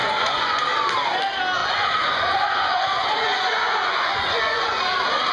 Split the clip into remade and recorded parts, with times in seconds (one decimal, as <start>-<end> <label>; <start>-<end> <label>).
0.0-0.6 remade; 0.6-1.6 recorded; 1.6-4.8 remade; 4.8-5.3 recorded